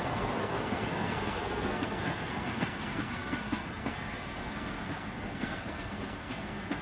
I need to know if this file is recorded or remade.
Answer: remade